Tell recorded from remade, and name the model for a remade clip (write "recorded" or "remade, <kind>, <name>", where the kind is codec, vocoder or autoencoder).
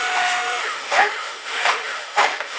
remade, autoencoder, DAC-VAE